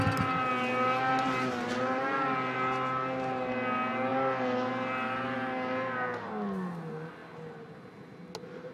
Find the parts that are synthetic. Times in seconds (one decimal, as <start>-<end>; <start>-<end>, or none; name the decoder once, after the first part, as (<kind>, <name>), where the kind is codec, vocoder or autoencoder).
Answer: none